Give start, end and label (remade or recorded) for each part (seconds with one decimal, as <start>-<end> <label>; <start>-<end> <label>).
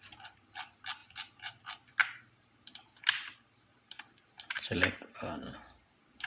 0.0-1.0 recorded; 1.0-1.6 remade; 1.6-2.0 recorded; 2.0-5.8 remade; 5.8-6.3 recorded